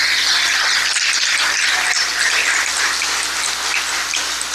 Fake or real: real